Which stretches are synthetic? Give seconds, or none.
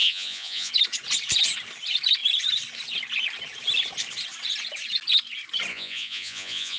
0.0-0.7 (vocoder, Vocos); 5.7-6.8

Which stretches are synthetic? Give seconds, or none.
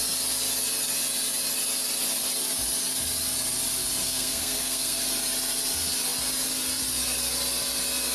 4.0-5.0 (codec, SNAC)